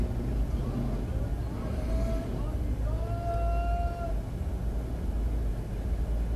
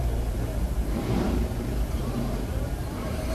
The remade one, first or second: second